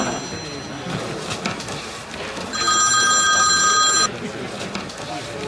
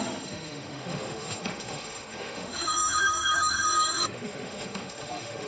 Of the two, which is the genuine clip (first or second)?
first